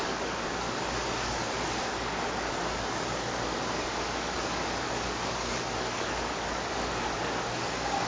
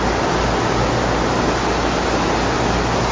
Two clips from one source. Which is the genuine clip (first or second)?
second